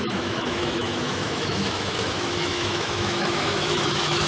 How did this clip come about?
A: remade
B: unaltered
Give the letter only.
A